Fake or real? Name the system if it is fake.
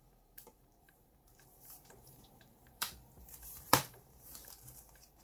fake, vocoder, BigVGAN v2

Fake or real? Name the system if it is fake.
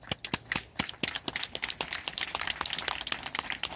real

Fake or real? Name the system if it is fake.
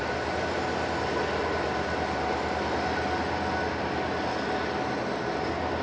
real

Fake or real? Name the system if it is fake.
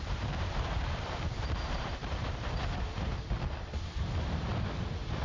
fake, vocoder, BigVGAN v2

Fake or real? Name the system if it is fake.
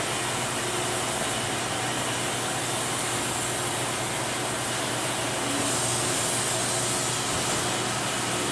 real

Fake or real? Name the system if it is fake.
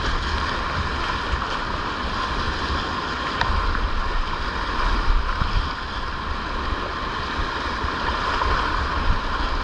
real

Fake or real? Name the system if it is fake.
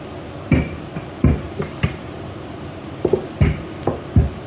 real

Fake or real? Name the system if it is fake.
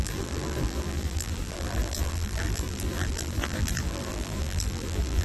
fake, vocoder, BigVGAN v2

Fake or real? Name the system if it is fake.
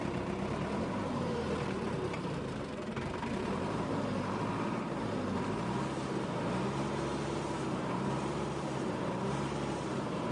fake, vocoder, BigVGAN v2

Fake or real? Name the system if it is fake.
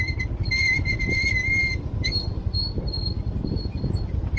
real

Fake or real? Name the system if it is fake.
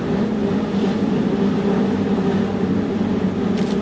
real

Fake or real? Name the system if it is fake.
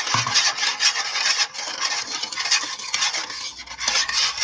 real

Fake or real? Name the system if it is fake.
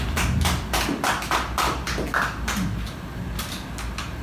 real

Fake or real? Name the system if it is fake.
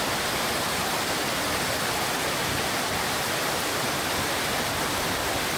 real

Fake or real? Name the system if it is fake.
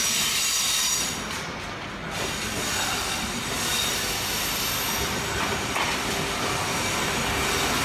real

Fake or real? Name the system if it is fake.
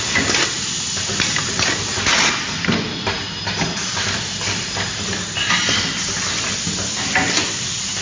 real